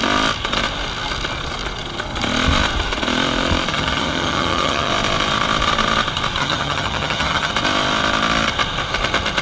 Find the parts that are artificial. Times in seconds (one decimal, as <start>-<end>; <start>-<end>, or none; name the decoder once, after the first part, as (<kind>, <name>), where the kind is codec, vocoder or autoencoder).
3.7-4.9 (vocoder, HiFi-GAN); 6.4-7.5